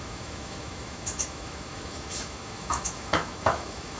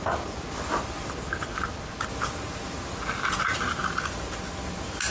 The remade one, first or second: first